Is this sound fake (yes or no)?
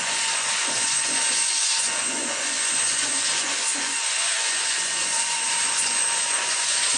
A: yes